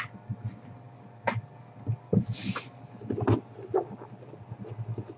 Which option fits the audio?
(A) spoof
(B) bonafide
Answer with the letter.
B